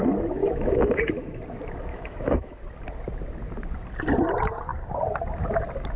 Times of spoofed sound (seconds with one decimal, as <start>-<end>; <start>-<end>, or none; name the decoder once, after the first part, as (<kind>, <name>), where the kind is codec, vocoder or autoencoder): 0.4-1.4 (autoencoder, DAC-VAE); 1.9-2.6